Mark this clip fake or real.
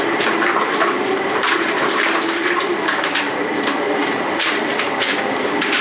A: fake